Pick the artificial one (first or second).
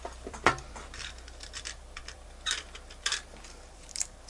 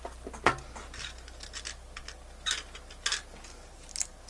first